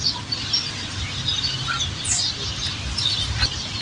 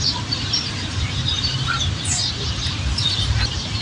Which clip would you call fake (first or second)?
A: second